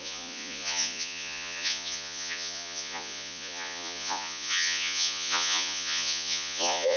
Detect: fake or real fake